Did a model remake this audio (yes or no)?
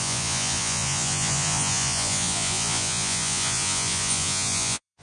yes